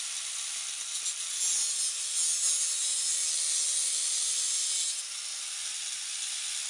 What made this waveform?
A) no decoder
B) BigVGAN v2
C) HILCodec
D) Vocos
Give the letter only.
A